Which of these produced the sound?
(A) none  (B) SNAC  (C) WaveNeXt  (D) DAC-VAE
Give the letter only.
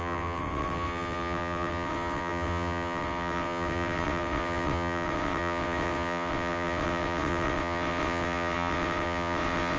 C